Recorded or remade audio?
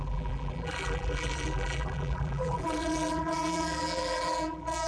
remade